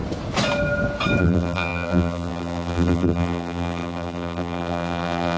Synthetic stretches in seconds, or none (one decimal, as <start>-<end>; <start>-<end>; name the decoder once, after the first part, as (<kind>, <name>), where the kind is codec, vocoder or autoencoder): 1.2-5.4 (vocoder, BigVGAN v2)